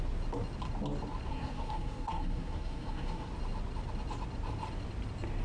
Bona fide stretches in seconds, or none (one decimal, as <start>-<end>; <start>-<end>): 0.0-1.3; 3.3-5.4